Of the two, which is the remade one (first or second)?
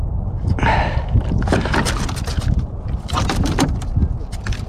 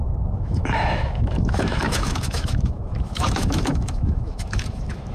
second